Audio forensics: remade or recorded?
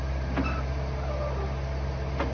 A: recorded